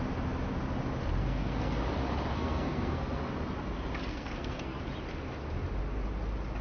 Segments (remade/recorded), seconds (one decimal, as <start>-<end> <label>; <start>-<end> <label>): 0.0-1.2 recorded; 1.2-1.8 remade; 1.8-2.3 recorded; 2.3-3.2 remade; 3.2-4.1 recorded; 4.1-4.8 remade; 4.8-6.6 recorded